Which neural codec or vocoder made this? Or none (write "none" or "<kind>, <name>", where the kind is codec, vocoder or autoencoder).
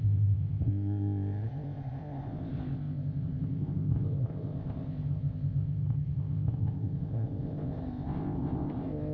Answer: codec, ZipCodec